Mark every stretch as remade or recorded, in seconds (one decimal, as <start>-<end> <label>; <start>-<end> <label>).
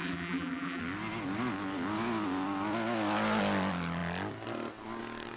0.0-0.8 remade; 0.8-5.4 recorded